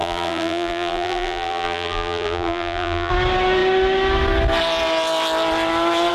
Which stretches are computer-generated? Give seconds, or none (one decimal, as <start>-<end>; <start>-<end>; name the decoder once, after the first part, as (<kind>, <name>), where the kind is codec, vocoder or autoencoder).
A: 0.0-3.1 (vocoder, BigVGAN v2)